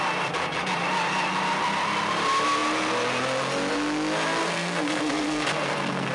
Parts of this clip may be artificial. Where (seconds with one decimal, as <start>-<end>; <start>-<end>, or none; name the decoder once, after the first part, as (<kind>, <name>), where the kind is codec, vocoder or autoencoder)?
4.4-6.1 (codec, SNAC)